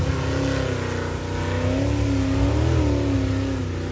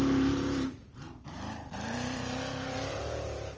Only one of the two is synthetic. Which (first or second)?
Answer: second